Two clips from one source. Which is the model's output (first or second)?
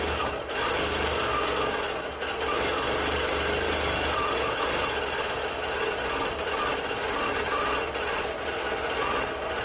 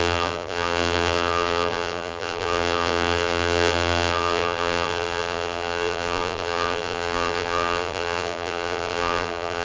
second